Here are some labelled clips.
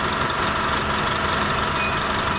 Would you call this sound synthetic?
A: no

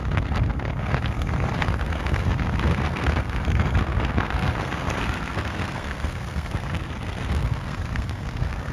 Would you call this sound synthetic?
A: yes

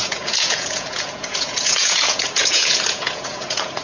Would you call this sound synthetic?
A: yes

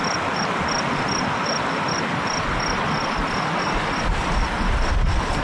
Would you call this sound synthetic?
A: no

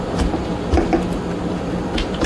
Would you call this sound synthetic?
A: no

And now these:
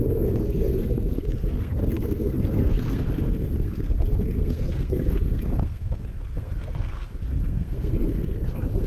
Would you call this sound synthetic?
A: yes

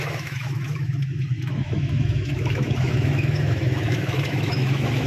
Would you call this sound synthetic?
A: yes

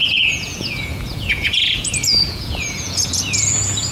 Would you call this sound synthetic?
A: yes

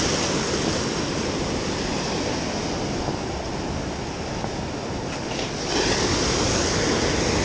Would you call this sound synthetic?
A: no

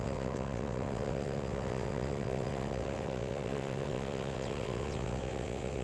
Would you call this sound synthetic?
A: yes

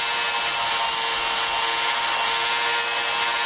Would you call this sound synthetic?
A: no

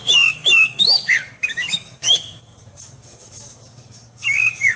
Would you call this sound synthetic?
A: yes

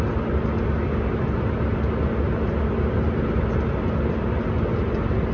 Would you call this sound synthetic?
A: no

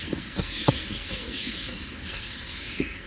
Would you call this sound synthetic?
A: yes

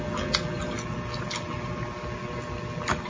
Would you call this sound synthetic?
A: no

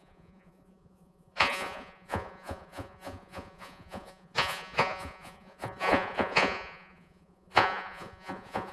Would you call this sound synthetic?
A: yes